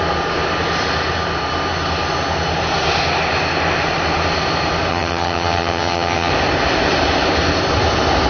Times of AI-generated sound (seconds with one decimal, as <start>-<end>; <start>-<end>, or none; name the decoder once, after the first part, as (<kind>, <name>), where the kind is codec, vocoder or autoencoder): 4.9-6.3 (vocoder, HiFi-GAN)